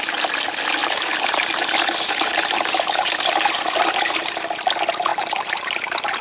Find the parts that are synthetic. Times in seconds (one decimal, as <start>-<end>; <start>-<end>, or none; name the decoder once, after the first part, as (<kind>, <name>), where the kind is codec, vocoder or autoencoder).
0.8-4.3 (vocoder, BigVGAN v2)